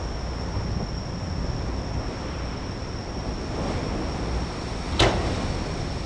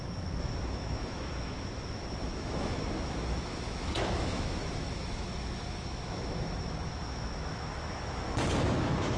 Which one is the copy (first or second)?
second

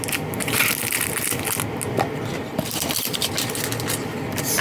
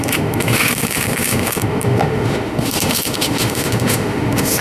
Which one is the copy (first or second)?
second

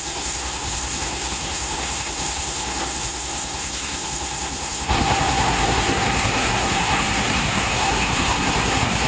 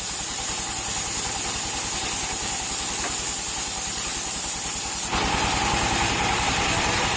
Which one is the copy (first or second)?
first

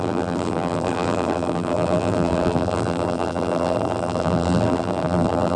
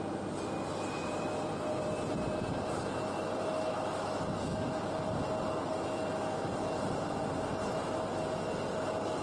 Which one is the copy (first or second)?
first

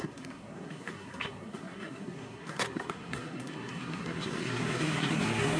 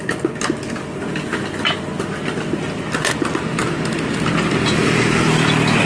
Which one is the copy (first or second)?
first